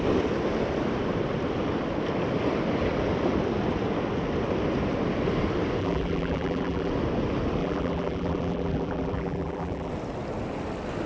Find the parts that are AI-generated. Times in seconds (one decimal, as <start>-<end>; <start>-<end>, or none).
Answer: 5.8-6.9; 7.6-9.9